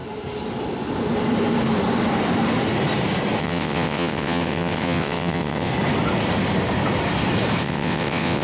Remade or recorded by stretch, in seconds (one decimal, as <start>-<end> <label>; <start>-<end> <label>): 0.0-3.4 recorded; 3.4-5.7 remade; 5.7-7.6 recorded; 7.6-8.4 remade

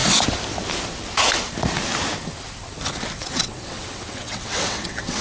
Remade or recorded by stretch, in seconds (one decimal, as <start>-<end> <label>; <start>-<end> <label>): 0.0-3.2 recorded; 3.2-5.2 remade